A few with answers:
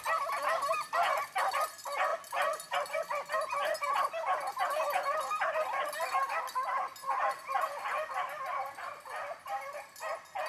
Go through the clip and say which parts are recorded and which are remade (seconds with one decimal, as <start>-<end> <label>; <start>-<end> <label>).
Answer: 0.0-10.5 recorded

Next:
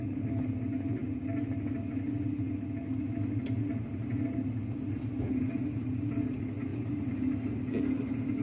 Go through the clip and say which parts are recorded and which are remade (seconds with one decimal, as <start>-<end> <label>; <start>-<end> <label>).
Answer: 0.0-8.4 recorded

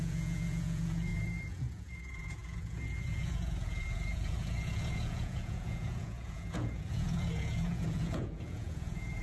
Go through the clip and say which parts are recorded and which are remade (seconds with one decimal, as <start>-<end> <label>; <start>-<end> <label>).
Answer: 0.0-9.2 remade